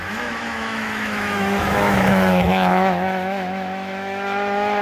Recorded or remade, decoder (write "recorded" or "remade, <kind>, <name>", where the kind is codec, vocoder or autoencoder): remade, autoencoder, DAC-VAE